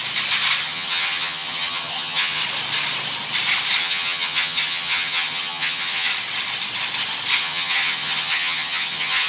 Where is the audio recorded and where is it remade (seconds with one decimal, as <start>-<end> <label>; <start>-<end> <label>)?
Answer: 0.0-0.6 recorded; 0.6-2.4 remade; 2.4-3.8 recorded; 3.8-6.1 remade; 6.1-7.4 recorded; 7.4-9.3 remade